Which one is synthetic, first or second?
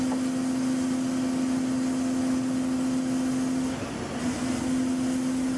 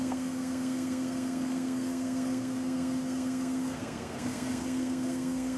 second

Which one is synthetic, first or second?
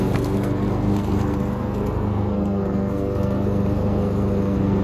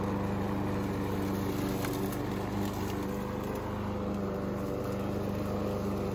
first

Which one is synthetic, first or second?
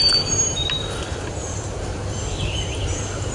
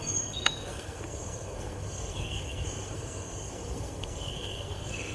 second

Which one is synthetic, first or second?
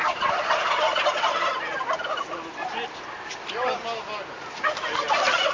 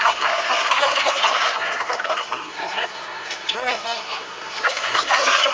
second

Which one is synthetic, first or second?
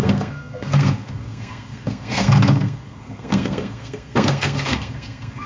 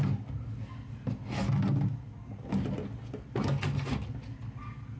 first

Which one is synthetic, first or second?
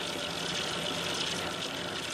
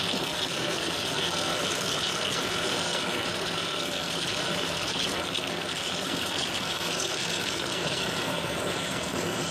second